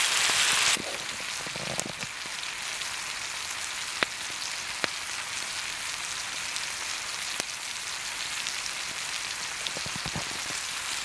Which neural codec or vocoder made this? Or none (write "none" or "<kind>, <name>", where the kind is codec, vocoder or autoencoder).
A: none